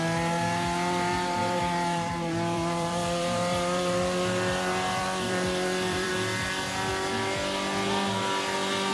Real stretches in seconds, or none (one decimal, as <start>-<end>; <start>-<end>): 0.0-1.4; 6.1-8.9